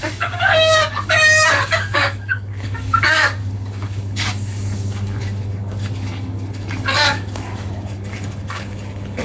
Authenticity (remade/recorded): remade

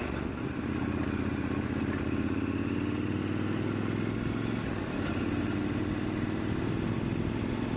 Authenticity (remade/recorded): recorded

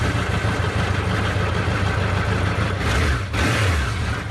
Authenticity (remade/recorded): recorded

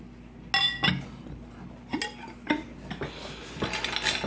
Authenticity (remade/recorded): recorded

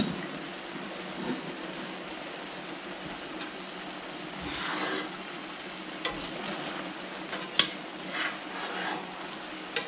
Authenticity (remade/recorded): recorded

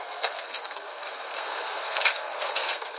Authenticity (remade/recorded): remade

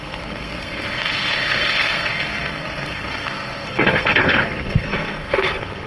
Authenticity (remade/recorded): remade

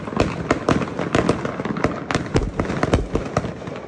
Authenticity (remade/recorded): recorded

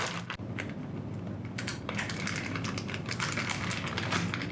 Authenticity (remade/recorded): recorded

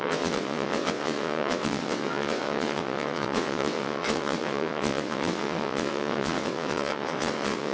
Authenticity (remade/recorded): remade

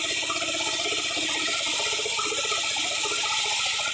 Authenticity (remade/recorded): recorded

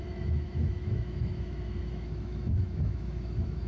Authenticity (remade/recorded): remade